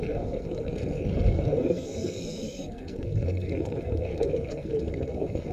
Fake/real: fake